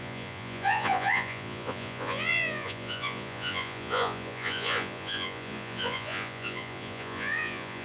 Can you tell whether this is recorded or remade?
remade